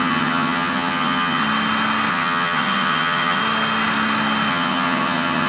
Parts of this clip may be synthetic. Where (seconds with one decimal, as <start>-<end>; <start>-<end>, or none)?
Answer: 0.0-1.4; 2.1-3.4; 4.5-5.5

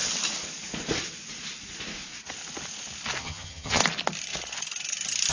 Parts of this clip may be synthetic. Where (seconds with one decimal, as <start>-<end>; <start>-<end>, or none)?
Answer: 3.2-3.8